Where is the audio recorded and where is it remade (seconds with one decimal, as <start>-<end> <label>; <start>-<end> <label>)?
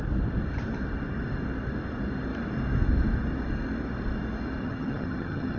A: 0.0-4.6 recorded; 4.6-5.6 remade